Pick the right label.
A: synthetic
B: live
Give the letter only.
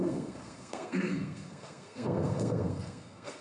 A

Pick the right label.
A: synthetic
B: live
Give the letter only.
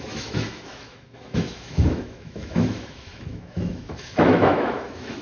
A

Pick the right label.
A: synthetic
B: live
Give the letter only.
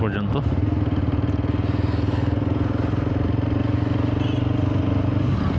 B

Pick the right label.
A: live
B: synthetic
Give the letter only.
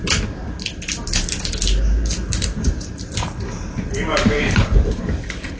A